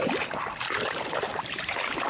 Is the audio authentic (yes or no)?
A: no